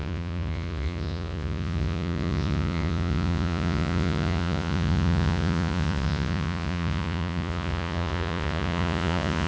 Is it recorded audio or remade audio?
remade